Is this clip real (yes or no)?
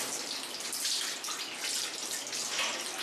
yes